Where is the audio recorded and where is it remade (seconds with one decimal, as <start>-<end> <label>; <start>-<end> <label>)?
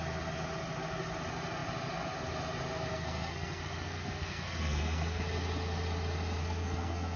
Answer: 0.0-2.9 recorded; 2.9-5.2 remade; 5.2-6.4 recorded; 6.4-7.2 remade